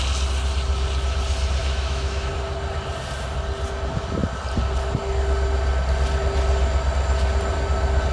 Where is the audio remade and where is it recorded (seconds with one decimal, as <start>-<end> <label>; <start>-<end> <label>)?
0.0-1.6 recorded; 1.6-2.3 remade; 2.3-8.1 recorded